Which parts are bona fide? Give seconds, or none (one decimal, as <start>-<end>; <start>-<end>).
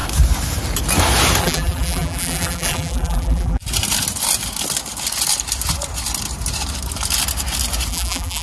0.0-1.4; 3.6-7.9